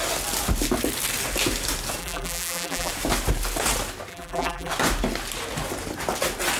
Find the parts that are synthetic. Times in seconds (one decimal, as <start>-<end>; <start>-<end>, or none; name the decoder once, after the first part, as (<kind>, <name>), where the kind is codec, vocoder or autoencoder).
2.0-2.9 (vocoder, BigVGAN v2); 4.1-4.7